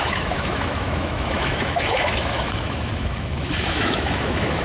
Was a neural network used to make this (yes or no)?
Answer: yes